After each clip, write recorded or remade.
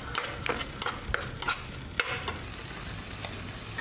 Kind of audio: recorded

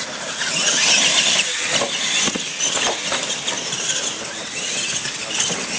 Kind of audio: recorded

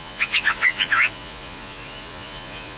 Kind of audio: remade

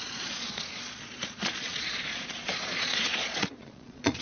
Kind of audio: remade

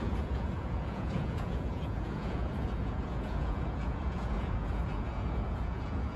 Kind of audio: remade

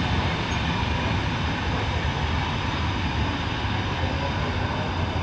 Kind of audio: recorded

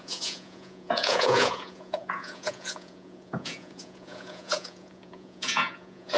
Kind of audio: remade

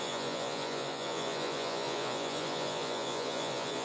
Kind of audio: remade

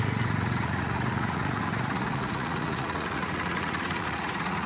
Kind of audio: remade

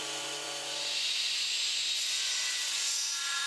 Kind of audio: remade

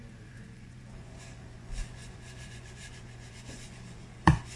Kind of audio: remade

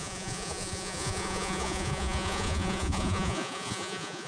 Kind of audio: remade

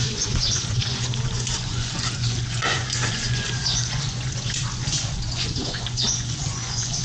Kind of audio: remade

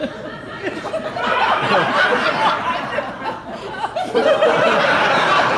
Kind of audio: recorded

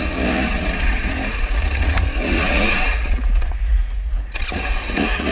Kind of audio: remade